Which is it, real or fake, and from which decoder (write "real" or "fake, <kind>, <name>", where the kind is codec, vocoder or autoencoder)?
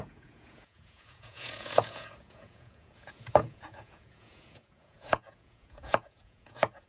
fake, vocoder, Vocos